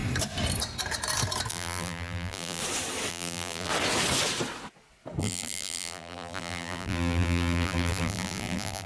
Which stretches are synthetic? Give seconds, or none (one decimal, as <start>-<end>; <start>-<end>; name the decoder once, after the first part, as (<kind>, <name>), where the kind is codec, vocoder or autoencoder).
1.5-2.6 (vocoder, BigVGAN v2); 3.1-3.7; 5.2-8.9